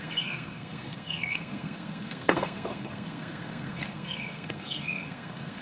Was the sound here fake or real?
fake